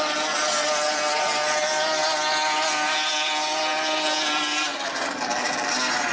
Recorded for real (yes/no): yes